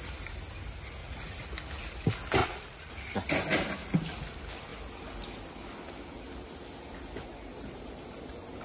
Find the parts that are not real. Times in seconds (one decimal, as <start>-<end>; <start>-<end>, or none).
1.0-1.5; 2.4-2.9